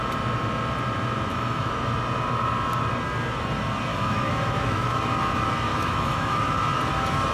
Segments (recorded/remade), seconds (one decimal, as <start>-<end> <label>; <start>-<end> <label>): 0.0-1.3 recorded; 1.3-1.8 remade; 1.8-3.9 recorded; 3.9-5.0 remade; 5.0-5.7 recorded; 5.7-6.5 remade; 6.5-7.3 recorded